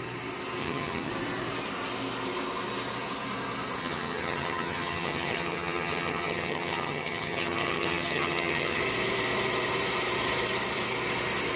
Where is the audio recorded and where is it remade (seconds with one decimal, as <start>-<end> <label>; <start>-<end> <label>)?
0.0-0.6 recorded; 0.6-1.1 remade; 1.1-3.8 recorded; 3.8-8.8 remade; 8.8-11.6 recorded